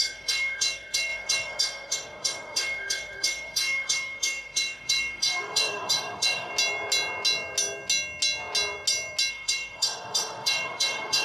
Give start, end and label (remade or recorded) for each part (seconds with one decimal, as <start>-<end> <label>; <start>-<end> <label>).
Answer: 0.0-6.5 remade; 6.5-9.3 recorded; 9.3-11.2 remade